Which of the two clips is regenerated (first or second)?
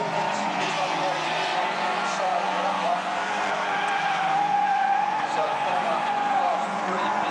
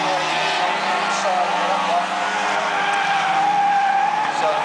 first